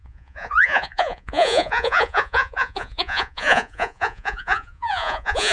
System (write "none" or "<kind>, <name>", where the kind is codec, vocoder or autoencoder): vocoder, Vocos